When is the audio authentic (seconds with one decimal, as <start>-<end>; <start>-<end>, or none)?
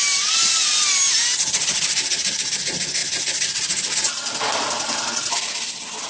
0.0-6.1